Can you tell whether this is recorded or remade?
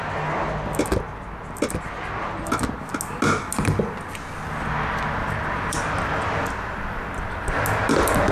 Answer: recorded